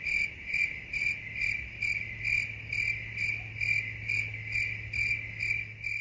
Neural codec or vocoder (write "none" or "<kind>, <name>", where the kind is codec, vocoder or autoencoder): none